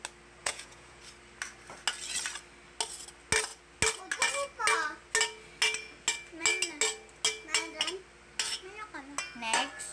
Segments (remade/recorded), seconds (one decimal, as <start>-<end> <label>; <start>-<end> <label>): 0.0-0.4 recorded; 0.4-1.0 remade; 1.0-9.9 recorded